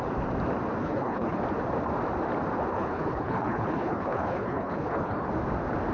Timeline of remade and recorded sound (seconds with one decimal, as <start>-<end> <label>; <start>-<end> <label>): 0.0-0.8 recorded; 0.8-1.4 remade; 1.4-2.7 recorded; 2.7-5.3 remade; 5.3-5.9 recorded